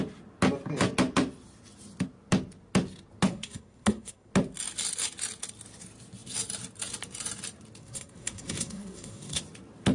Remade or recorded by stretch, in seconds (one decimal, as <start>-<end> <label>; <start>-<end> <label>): 0.0-3.3 recorded; 3.3-4.3 remade; 4.3-7.8 recorded; 7.8-9.4 remade; 9.4-9.9 recorded